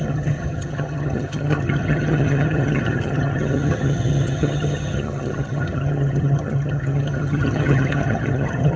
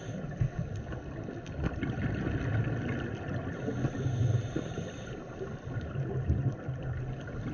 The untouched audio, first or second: second